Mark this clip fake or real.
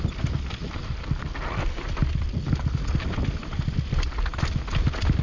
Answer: real